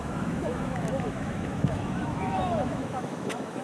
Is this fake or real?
fake